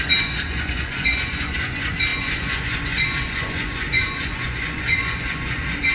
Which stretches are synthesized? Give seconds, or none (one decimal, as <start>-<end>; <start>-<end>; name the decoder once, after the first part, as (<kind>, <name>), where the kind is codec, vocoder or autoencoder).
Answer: 0.0-5.9 (vocoder, Vocos)